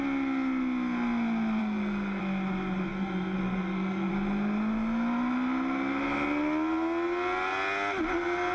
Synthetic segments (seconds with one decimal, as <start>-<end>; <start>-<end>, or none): 1.6-2.2; 2.9-4.1